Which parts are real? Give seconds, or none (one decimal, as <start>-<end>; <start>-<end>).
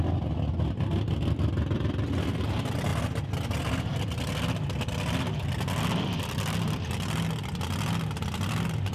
0.0-8.9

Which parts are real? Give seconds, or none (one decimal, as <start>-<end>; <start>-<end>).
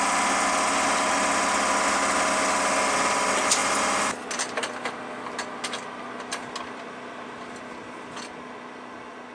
0.0-9.3